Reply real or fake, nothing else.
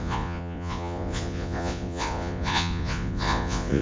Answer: fake